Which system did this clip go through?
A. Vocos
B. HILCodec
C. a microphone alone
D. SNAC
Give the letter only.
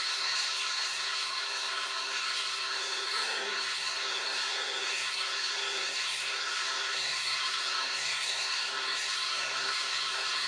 D